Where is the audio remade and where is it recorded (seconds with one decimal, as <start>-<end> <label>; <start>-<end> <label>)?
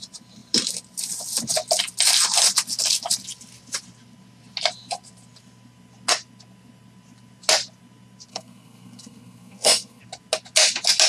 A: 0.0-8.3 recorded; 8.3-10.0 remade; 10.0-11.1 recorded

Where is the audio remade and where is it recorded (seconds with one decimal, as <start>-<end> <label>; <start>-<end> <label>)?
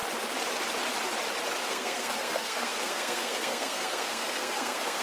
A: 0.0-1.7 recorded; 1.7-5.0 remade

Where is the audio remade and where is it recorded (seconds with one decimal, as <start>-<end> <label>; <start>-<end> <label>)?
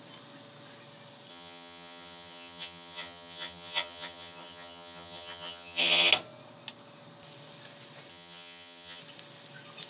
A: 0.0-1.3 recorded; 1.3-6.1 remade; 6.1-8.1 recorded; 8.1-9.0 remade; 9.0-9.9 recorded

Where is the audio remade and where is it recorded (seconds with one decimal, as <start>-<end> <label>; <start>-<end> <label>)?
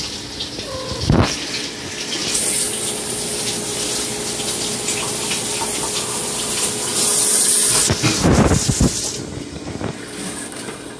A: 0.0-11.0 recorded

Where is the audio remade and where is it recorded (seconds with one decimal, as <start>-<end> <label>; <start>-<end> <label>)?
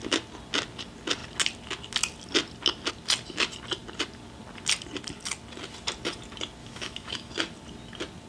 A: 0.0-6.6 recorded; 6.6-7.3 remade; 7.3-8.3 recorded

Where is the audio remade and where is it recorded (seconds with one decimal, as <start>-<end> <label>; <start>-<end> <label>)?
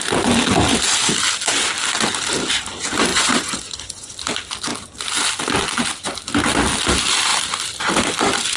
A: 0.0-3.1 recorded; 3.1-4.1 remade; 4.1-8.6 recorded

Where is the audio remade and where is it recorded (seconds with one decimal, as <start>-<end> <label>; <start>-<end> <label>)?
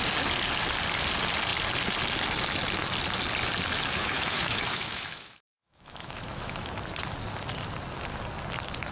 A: 0.0-4.0 recorded; 4.0-6.7 remade; 6.7-8.9 recorded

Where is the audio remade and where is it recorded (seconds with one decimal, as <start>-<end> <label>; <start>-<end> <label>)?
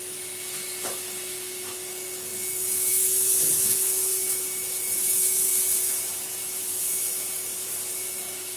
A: 0.0-8.6 remade